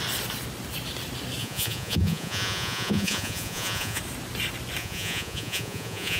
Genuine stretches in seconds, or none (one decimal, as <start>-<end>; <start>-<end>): 0.0-1.4; 4.0-4.8